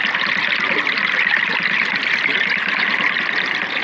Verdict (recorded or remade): recorded